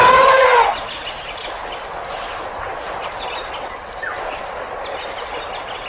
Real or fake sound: real